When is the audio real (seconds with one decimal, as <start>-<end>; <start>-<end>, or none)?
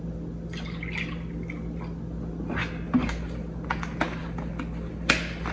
0.0-5.5